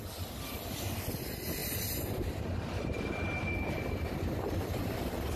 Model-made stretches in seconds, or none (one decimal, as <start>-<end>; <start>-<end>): none